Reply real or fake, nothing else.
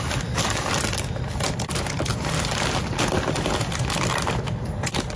real